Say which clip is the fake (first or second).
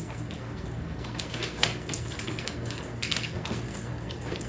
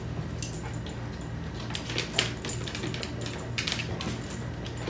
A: first